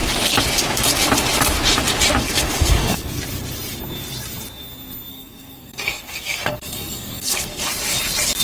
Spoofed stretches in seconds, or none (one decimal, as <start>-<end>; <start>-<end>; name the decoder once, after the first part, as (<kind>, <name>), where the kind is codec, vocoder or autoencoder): 2.2-3.2 (codec, SNAC); 5.1-7.6